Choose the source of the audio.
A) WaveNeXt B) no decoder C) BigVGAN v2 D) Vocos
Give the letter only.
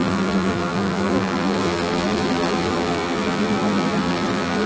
C